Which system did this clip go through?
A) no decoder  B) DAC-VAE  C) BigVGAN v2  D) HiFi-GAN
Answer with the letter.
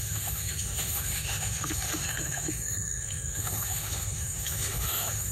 B